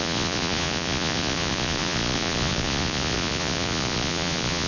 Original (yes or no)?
no